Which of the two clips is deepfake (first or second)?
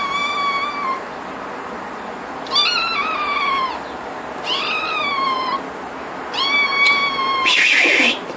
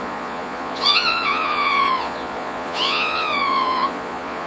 second